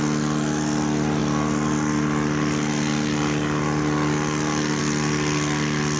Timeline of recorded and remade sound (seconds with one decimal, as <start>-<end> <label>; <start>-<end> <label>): 0.0-6.0 recorded